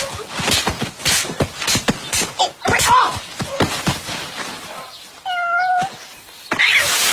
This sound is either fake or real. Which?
real